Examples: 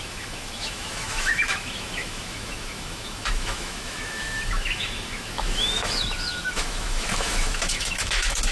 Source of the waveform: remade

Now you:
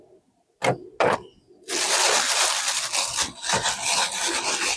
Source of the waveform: recorded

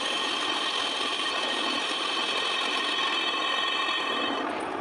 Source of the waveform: recorded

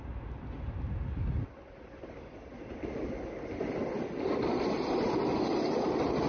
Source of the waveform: recorded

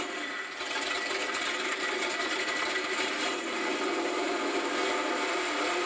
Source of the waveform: recorded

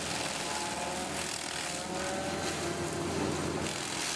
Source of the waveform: recorded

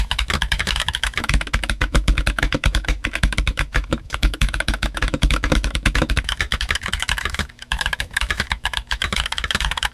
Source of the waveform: remade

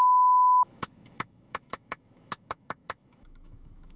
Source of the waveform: remade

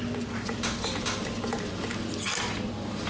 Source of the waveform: recorded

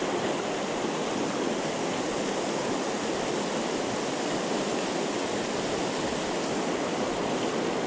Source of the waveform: recorded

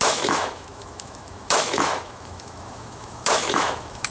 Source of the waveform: remade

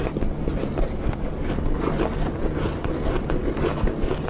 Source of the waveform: recorded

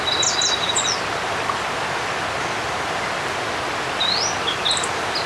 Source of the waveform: recorded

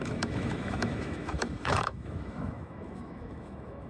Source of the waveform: remade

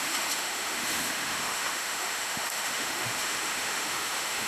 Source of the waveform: remade